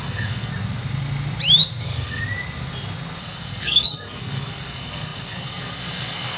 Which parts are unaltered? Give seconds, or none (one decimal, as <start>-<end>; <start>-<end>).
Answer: 0.5-1.8; 2.2-3.2